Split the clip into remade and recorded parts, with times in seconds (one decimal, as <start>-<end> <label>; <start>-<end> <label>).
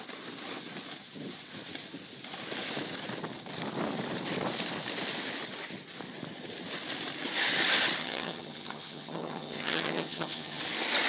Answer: 0.0-8.0 recorded; 8.0-10.6 remade; 10.6-11.1 recorded